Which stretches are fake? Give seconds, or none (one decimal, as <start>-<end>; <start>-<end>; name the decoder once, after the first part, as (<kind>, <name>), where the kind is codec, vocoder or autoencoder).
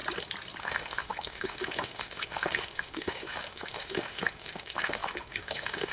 0.6-5.9 (autoencoder, DAC-VAE)